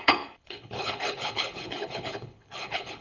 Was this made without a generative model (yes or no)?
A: no